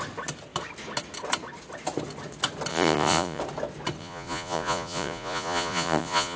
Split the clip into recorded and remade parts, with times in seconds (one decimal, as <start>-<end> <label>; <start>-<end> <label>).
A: 0.0-2.7 recorded; 2.7-3.4 remade; 3.4-4.0 recorded; 4.0-6.4 remade